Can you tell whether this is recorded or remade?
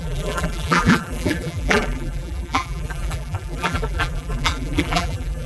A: remade